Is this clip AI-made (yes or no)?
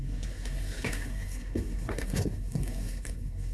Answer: yes